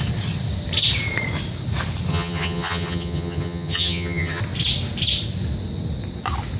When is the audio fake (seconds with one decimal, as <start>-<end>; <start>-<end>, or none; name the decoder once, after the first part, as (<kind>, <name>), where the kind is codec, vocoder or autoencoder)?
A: 2.1-4.4 (vocoder, HiFi-GAN)